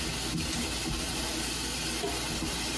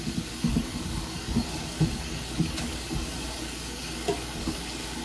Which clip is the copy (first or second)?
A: second